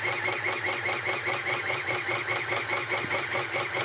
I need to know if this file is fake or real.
real